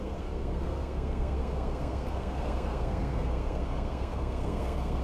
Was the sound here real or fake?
fake